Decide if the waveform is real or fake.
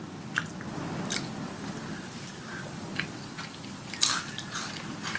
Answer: fake